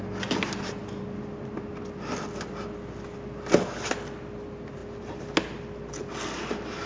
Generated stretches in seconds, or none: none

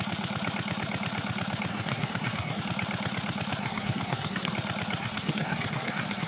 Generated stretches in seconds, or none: 1.7-2.6 (codec, SNAC); 3.6-4.5; 5.0-6.3

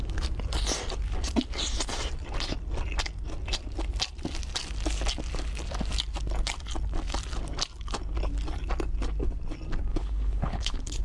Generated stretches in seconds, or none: 9.9-11.0 (codec, HILCodec)

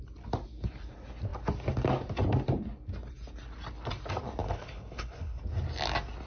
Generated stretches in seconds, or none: 4.4-5.4 (codec, HILCodec)

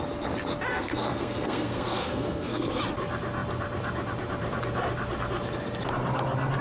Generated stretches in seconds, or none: 0.7-2.8 (codec, SNAC)

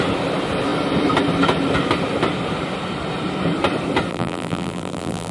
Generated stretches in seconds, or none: 4.1-5.3 (vocoder, BigVGAN v2)

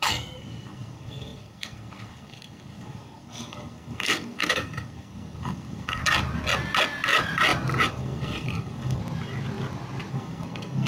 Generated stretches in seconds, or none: 0.0-6.0 (codec, SNAC); 7.9-9.0; 10.1-10.9